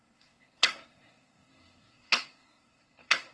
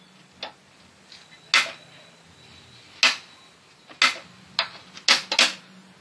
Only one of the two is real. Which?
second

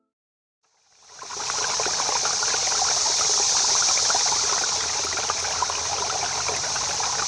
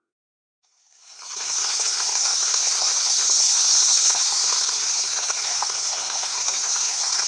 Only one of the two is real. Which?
first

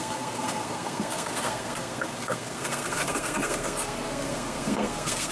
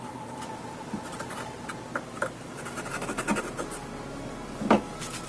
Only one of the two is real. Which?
second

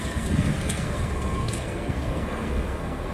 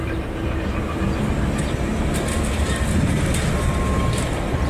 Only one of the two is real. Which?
second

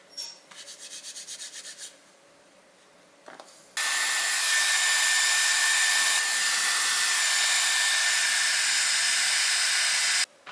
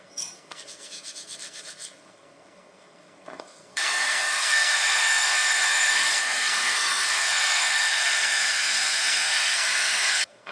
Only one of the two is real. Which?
first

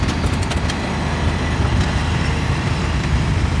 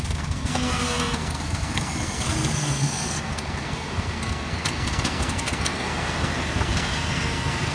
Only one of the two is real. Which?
first